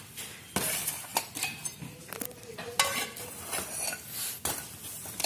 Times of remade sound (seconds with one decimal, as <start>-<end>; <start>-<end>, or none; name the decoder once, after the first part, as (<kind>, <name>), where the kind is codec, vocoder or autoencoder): none